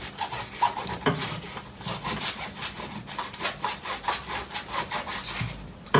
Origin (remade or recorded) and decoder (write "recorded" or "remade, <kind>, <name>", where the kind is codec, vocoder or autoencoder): recorded